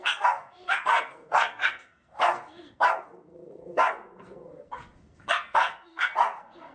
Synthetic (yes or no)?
yes